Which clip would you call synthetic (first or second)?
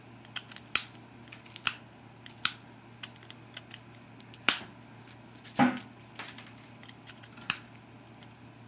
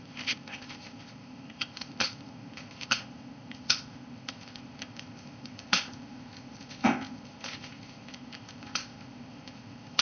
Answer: second